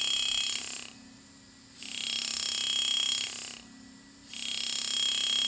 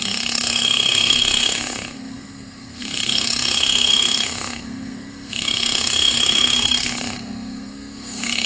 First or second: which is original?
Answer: first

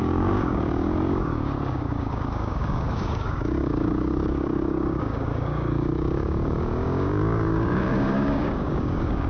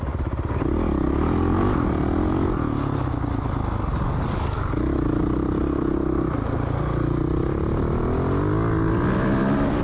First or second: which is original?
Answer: second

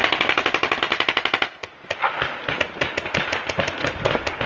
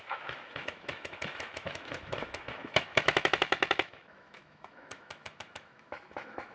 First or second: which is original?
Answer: first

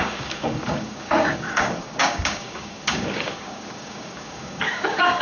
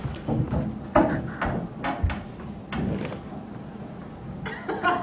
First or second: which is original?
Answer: second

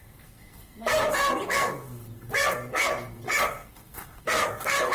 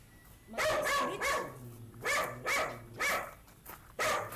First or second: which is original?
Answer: second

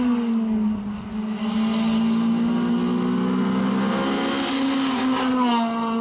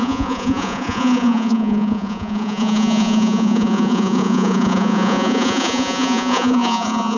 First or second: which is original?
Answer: first